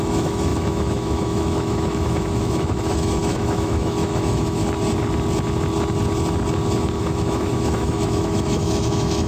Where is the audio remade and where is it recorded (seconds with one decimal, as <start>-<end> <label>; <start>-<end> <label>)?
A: 0.0-4.6 remade; 4.6-7.0 recorded; 7.0-9.3 remade